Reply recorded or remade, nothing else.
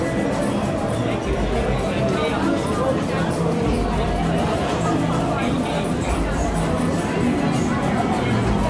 recorded